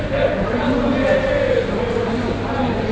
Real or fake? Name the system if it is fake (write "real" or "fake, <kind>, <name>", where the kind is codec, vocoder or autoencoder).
real